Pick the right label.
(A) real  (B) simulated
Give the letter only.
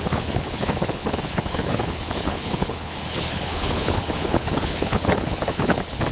B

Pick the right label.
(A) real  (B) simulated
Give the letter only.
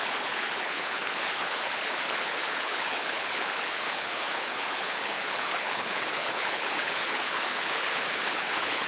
B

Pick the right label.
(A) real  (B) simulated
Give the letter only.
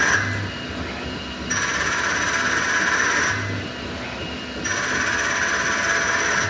A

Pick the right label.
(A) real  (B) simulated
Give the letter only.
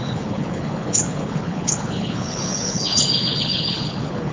B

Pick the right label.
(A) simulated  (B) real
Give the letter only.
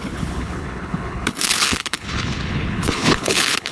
A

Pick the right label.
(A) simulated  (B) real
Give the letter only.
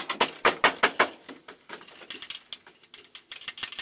B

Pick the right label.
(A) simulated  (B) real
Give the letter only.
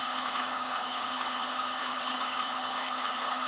A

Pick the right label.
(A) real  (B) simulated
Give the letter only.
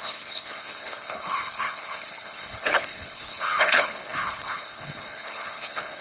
B